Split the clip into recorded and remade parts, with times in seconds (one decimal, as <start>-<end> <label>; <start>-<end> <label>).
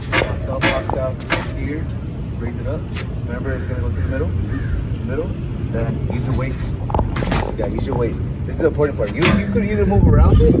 0.0-10.6 recorded